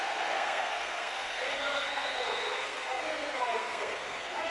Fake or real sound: fake